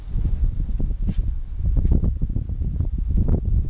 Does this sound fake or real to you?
real